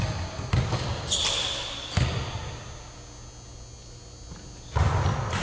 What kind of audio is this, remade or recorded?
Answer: recorded